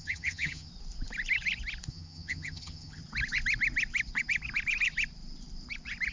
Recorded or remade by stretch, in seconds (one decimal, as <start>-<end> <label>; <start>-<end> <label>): 0.0-0.7 remade; 0.7-1.9 recorded; 1.9-3.0 remade; 3.0-6.1 recorded